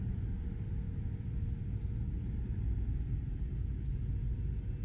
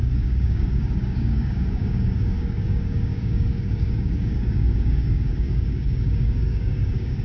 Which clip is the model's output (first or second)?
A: second